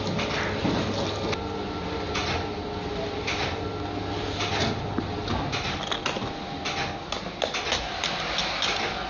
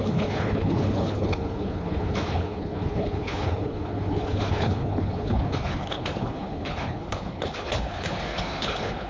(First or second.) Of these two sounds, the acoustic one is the first